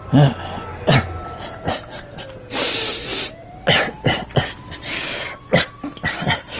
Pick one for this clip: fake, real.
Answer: real